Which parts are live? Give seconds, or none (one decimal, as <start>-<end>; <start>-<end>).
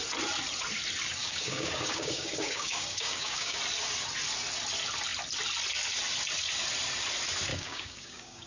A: 0.0-1.2; 3.6-7.5